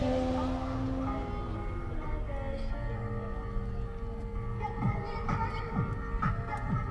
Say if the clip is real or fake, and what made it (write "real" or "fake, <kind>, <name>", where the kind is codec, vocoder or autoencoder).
real